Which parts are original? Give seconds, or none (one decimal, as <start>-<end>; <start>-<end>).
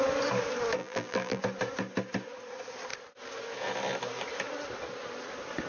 0.0-0.8; 1.4-5.7